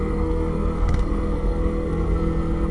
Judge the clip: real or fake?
fake